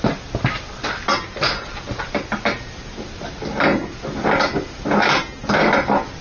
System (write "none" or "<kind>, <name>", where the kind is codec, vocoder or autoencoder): none